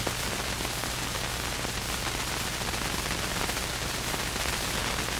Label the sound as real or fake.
real